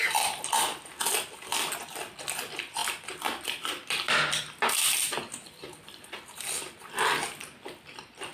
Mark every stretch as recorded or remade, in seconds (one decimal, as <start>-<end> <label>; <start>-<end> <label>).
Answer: 0.0-8.3 recorded